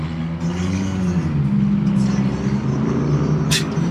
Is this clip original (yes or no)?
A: yes